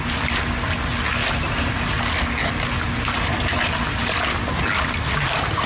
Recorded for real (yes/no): yes